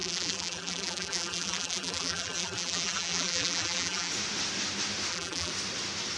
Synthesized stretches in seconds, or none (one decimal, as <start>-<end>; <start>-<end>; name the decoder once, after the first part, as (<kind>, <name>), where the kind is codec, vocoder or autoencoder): 0.0-4.1 (vocoder, BigVGAN v2); 5.1-5.5